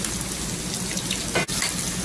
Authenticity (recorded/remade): recorded